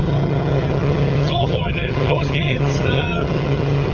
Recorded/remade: remade